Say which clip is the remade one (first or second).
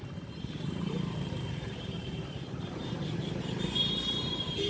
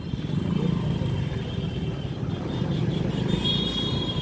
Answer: first